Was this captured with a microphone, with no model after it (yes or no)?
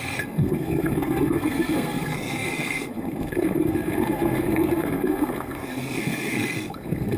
no